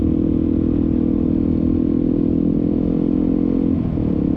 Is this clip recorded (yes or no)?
yes